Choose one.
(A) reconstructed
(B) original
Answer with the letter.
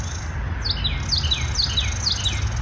B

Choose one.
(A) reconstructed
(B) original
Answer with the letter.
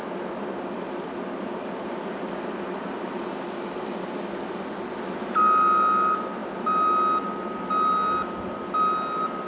B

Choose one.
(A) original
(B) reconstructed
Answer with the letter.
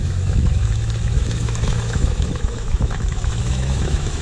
B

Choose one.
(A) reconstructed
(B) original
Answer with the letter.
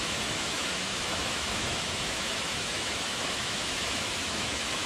A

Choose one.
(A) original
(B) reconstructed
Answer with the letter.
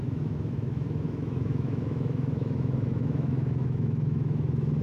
B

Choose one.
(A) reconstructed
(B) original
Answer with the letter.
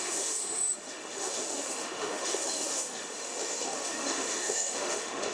A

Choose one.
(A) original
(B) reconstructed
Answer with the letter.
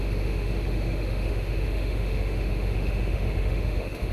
B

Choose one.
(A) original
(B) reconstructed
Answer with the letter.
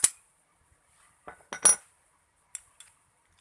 A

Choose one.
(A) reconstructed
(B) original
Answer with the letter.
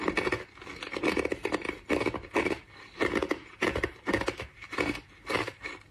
B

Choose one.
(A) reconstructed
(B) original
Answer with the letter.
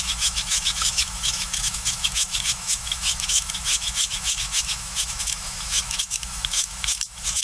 A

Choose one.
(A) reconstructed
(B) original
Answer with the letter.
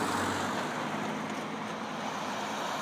B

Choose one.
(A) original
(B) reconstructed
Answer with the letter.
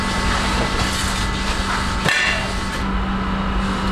A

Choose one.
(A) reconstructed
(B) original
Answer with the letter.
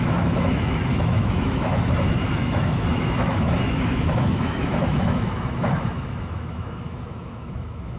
A